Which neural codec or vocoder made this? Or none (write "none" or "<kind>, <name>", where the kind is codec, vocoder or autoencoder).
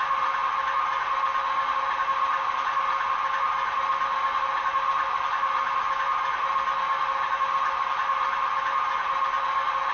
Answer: none